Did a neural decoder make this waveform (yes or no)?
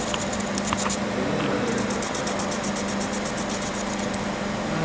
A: no